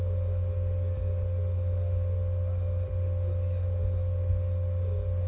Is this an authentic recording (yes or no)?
yes